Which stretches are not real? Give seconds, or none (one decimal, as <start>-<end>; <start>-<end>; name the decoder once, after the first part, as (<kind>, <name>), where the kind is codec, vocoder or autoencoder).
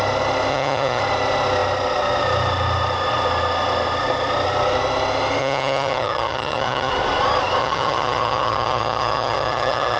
0.5-1.0 (vocoder, HiFi-GAN); 5.4-6.9; 7.6-10.0